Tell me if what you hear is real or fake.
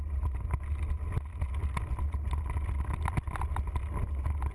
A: real